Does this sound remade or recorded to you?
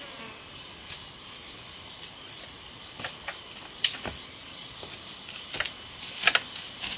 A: recorded